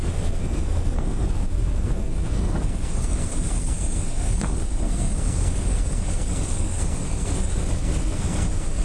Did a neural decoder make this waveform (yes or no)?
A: yes